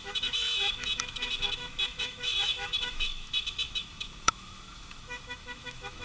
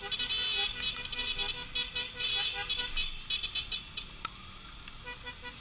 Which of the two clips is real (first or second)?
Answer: second